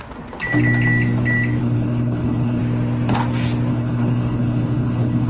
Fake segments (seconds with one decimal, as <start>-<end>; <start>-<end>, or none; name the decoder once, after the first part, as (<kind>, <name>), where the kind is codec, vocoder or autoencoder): 1.6-2.6 (codec, HILCodec); 3.7-5.3